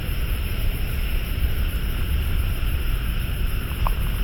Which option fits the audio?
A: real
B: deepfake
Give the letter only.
B